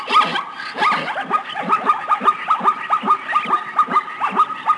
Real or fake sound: real